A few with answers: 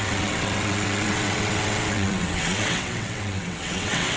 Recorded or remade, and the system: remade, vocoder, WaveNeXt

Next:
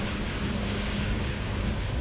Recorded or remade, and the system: remade, codec, DAC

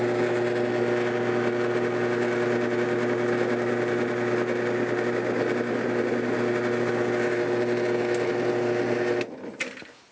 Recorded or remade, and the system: recorded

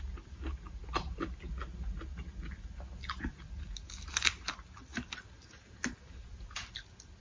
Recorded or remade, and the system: recorded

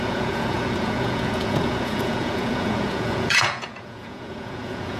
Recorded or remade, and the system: remade, vocoder, Vocos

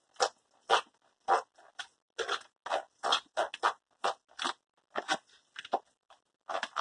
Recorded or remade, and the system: recorded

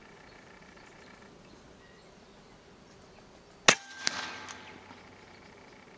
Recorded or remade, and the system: recorded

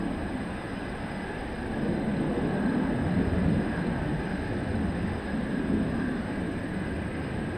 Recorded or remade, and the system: recorded